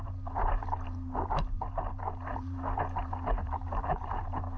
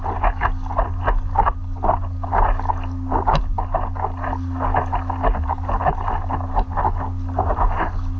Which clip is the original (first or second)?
second